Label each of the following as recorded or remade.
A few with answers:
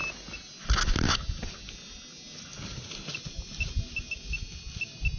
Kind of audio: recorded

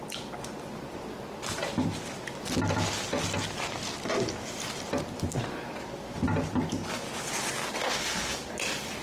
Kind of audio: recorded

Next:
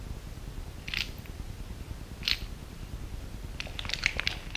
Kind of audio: recorded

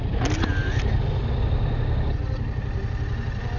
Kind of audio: recorded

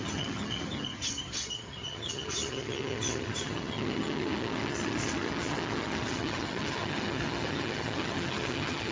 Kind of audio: remade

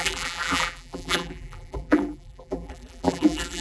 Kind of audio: remade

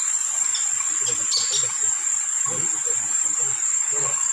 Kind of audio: recorded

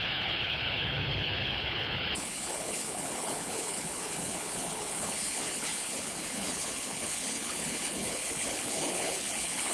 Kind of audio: remade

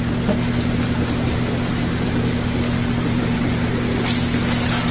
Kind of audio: recorded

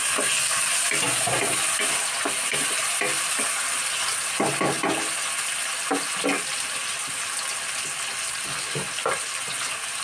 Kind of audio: recorded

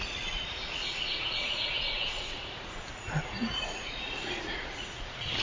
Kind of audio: remade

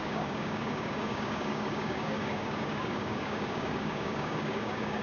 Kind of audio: remade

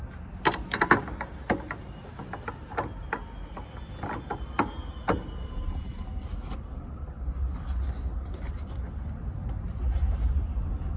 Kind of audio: recorded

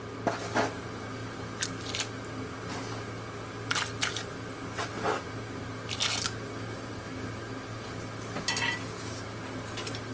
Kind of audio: recorded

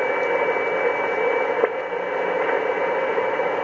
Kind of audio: recorded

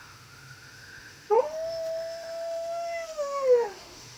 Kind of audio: remade